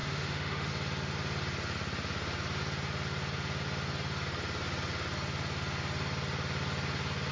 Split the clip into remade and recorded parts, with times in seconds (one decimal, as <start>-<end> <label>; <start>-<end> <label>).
0.0-0.7 remade; 0.7-7.3 recorded